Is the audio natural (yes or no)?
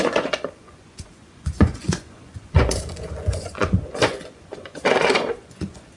no